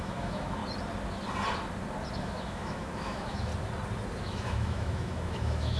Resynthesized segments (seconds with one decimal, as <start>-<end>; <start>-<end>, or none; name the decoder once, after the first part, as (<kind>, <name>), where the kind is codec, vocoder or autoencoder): 0.0-0.6 (autoencoder, DAC-VAE); 2.2-3.5; 4.2-5.8